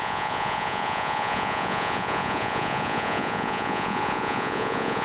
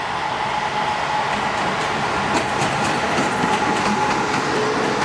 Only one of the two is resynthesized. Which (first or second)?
first